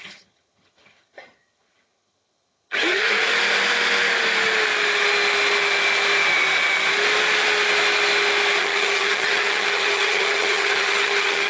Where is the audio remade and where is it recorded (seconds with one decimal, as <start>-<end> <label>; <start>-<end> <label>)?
0.0-3.3 remade; 3.3-8.6 recorded; 8.6-11.5 remade